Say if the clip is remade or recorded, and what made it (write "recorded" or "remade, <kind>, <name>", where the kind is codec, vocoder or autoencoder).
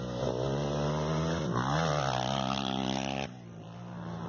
recorded